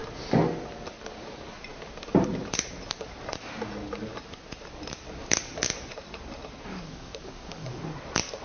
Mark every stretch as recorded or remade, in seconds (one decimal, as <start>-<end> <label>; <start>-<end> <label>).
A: 0.0-5.2 recorded; 5.2-5.7 remade; 5.7-6.7 recorded; 6.7-7.8 remade; 7.8-8.4 recorded